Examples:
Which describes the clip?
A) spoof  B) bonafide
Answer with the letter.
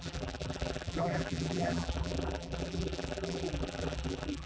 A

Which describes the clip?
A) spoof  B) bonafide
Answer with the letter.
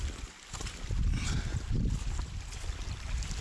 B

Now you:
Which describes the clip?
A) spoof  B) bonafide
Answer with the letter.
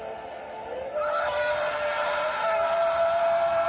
A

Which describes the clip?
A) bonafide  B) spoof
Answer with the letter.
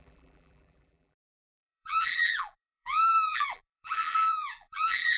B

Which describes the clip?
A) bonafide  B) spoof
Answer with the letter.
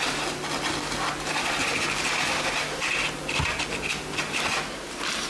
A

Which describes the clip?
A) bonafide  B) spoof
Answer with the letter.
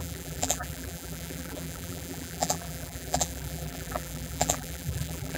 B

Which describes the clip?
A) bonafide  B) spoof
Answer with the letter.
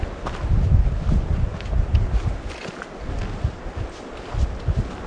A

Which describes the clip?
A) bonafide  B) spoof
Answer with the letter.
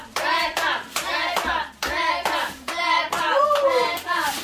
B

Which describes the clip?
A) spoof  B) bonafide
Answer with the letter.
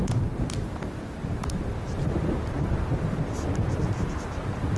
B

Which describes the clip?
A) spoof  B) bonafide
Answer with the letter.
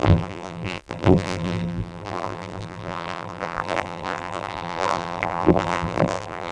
A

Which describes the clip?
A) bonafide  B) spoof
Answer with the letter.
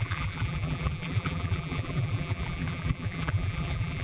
B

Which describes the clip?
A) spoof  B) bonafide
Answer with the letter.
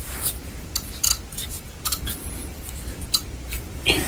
B